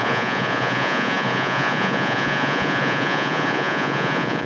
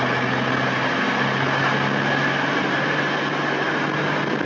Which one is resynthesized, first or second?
first